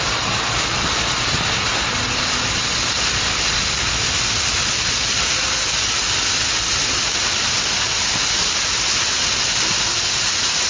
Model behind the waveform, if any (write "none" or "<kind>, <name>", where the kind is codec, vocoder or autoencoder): none